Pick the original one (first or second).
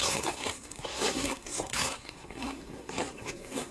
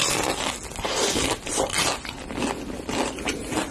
second